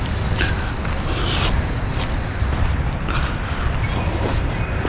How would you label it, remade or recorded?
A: recorded